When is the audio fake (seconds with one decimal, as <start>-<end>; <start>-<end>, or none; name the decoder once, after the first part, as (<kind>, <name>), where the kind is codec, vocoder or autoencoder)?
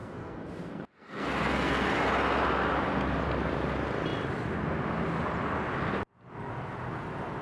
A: 0.0-1.9 (codec, SNAC)